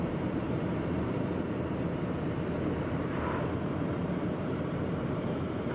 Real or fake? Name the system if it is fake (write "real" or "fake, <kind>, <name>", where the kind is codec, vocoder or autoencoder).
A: fake, vocoder, BigVGAN v2